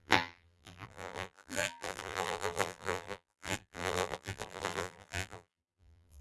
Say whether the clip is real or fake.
fake